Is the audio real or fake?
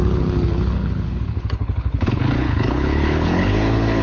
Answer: fake